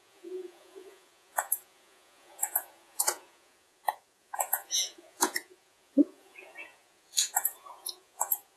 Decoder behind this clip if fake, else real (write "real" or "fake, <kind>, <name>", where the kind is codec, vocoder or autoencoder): fake, vocoder, Vocos